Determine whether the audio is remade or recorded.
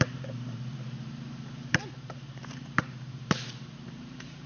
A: remade